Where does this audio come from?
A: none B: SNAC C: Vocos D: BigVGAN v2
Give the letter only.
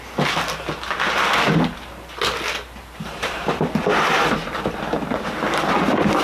D